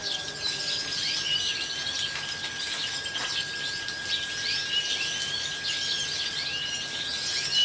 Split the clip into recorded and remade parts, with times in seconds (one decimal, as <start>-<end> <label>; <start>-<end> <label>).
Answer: 0.0-7.6 recorded